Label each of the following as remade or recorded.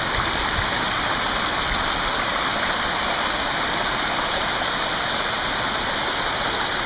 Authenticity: recorded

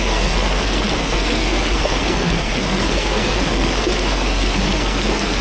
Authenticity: remade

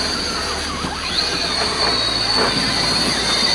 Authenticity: recorded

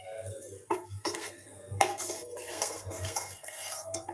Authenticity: remade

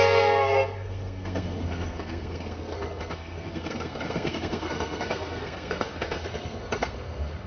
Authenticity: remade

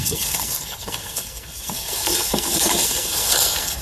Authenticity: remade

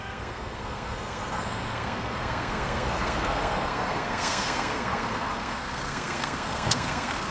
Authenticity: remade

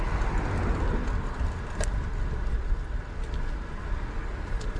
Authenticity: recorded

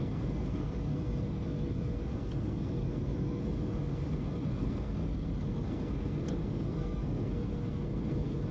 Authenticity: remade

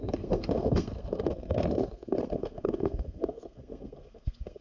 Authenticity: remade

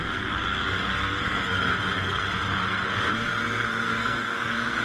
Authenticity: remade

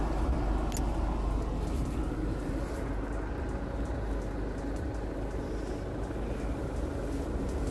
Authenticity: recorded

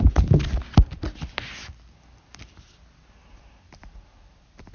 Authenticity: recorded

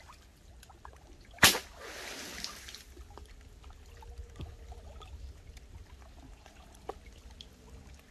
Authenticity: recorded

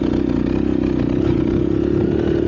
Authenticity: recorded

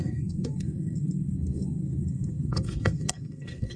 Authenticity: remade